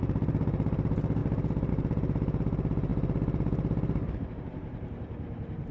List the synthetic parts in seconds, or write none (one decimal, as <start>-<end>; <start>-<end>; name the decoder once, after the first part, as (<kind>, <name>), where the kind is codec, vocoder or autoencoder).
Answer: 0.0-1.2 (vocoder, BigVGAN v2); 1.7-2.9; 4.1-5.7